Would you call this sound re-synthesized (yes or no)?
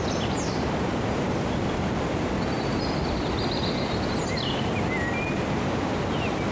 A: no